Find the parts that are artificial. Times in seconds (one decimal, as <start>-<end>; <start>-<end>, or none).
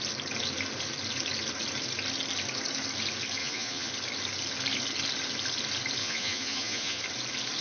3.4-3.9; 6.0-7.0